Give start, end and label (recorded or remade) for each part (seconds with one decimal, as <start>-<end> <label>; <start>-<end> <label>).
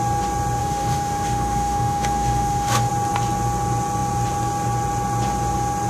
0.0-0.6 recorded; 0.6-2.9 remade; 2.9-5.9 recorded